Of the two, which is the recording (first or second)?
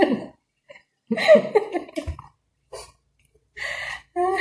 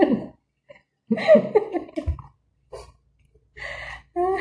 second